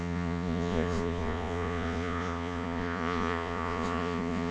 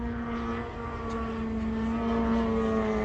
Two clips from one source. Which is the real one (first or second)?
second